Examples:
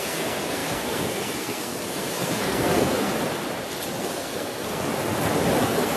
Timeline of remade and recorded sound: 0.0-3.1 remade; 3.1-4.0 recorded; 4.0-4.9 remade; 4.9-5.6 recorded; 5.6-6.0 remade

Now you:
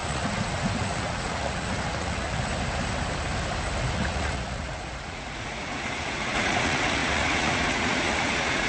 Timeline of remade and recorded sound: 0.0-2.4 remade; 2.4-3.9 recorded; 3.9-8.7 remade

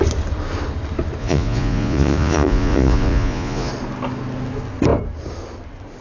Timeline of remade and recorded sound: 0.0-1.2 recorded; 1.2-3.7 remade; 3.7-6.0 recorded